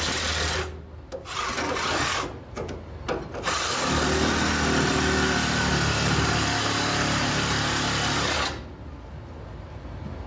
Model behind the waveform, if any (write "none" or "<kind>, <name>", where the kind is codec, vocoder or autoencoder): none